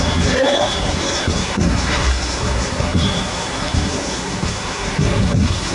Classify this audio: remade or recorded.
remade